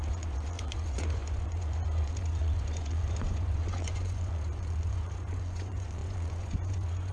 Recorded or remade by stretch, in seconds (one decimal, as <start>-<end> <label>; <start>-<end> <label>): 0.0-7.1 remade